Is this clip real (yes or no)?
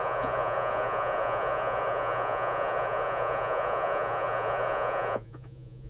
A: no